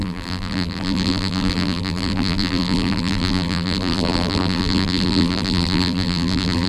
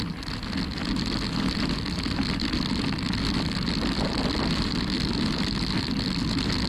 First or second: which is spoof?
first